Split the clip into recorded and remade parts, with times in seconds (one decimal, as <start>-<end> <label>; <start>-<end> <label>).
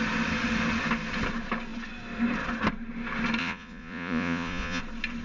0.0-3.4 recorded; 3.4-4.8 remade; 4.8-5.2 recorded